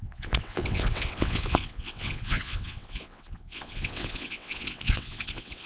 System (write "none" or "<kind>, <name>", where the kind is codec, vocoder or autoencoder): vocoder, WaveNeXt